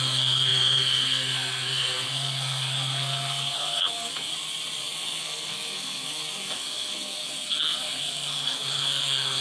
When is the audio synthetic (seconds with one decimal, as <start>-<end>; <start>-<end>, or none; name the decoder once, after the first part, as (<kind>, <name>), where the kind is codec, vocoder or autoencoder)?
0.0-4.3 (codec, SNAC); 4.8-9.4